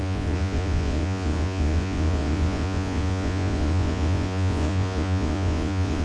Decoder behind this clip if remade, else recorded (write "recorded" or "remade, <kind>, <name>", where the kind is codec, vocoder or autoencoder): remade, vocoder, Vocos